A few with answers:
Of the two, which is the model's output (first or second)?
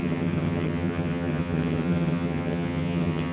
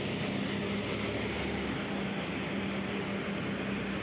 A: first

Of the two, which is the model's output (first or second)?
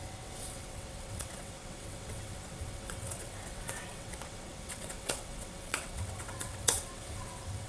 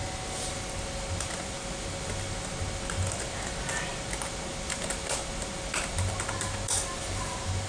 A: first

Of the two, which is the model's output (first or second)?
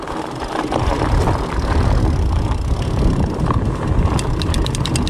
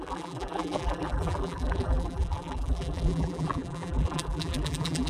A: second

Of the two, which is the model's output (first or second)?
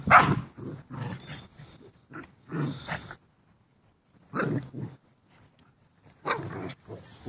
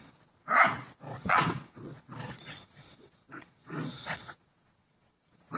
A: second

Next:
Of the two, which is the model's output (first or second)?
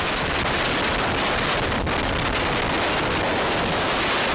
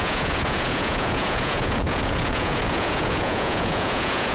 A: second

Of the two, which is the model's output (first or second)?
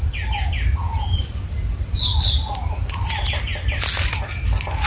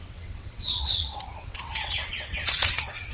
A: second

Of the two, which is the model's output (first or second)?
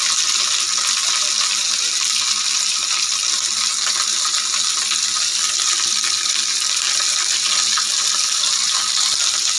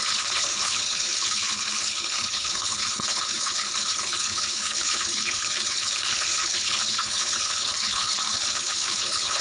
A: second